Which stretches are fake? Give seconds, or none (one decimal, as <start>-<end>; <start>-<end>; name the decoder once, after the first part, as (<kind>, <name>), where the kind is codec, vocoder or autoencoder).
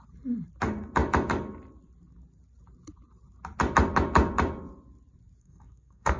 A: 5.4-6.2 (codec, SNAC)